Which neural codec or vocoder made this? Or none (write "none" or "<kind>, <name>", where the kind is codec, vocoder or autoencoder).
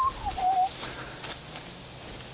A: none